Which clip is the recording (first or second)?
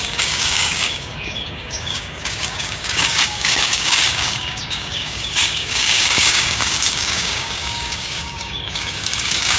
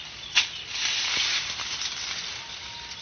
second